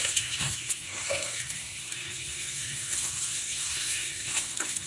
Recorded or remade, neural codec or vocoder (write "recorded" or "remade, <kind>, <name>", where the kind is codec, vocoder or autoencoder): remade, codec, SNAC